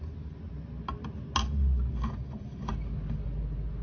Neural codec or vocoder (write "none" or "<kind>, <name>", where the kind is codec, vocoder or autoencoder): none